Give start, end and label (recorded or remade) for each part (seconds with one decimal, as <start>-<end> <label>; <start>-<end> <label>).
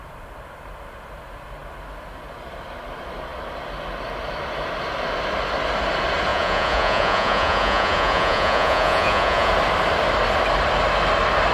0.0-6.3 recorded; 6.3-9.5 remade; 9.5-11.5 recorded